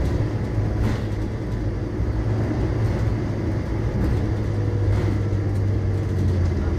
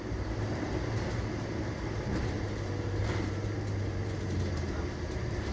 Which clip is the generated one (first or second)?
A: second